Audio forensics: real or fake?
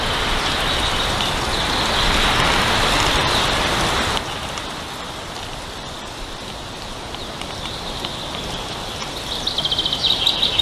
real